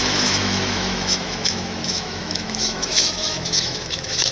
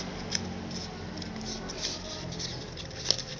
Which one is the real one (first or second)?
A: second